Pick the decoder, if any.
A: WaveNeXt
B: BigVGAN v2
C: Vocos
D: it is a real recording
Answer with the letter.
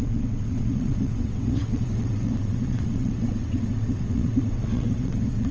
A